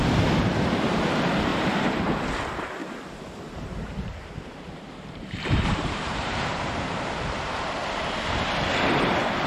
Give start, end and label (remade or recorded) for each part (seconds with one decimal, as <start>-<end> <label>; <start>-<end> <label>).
0.0-1.5 recorded; 1.5-2.1 remade; 2.1-2.8 recorded; 2.8-7.8 remade; 7.8-9.5 recorded